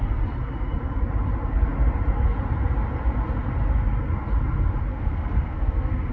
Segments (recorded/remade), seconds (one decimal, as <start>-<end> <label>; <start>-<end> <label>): 0.0-4.9 recorded; 4.9-6.1 remade